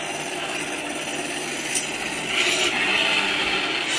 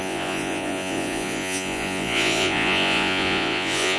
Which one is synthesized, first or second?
second